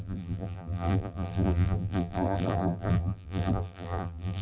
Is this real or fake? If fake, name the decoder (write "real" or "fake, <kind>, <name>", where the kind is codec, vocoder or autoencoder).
fake, vocoder, BigVGAN v2